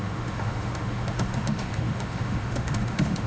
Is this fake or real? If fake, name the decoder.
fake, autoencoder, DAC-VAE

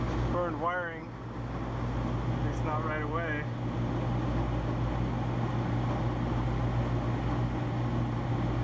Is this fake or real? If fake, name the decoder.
real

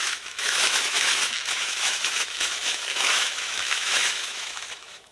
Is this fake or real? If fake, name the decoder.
fake, autoencoder, DAC-VAE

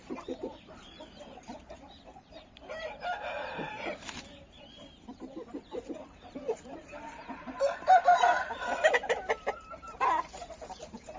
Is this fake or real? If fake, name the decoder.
fake, vocoder, BigVGAN v2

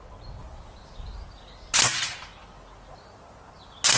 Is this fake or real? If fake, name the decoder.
real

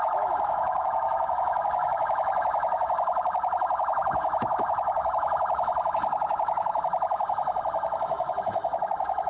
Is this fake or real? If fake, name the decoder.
fake, autoencoder, DAC-VAE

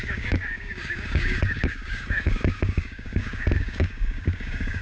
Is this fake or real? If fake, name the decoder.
fake, codec, DAC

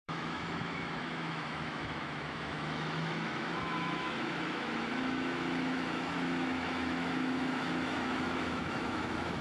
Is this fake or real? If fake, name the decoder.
fake, autoencoder, DAC-VAE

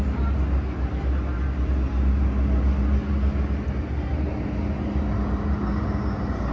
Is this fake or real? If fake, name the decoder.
real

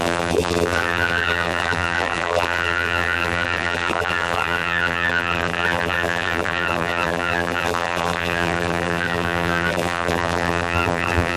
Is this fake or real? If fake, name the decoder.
fake, vocoder, BigVGAN v2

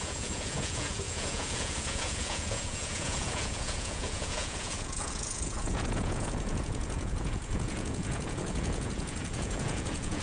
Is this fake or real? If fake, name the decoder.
fake, vocoder, Vocos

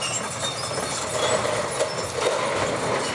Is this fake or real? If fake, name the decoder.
real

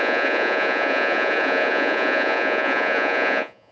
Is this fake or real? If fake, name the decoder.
fake, vocoder, Vocos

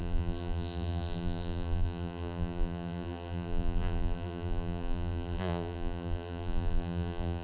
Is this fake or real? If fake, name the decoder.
fake, vocoder, BigVGAN v2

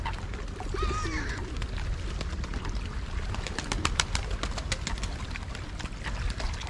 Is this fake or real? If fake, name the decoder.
real